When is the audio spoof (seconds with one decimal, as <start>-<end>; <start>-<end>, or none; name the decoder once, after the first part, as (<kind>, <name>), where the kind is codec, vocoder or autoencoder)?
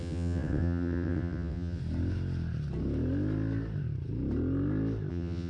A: 0.0-1.8 (vocoder, WaveNeXt); 5.1-5.5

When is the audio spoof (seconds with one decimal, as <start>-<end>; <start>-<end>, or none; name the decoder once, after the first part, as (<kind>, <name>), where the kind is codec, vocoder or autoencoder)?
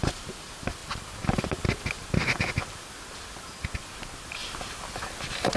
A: none